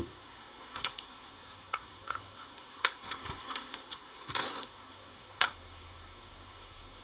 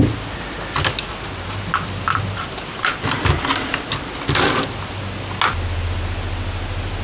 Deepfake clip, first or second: first